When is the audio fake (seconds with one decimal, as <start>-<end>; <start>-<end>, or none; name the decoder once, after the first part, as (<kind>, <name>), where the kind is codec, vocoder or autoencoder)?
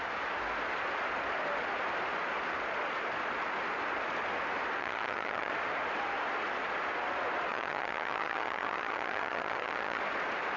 4.8-5.5 (vocoder, HiFi-GAN); 7.5-10.0